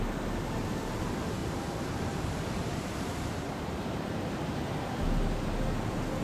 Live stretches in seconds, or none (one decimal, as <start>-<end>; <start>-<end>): 0.0-1.4; 4.4-6.2